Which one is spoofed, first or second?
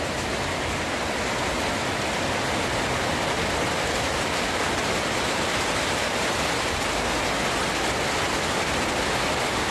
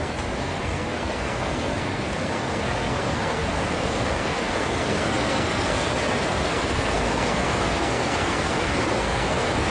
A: second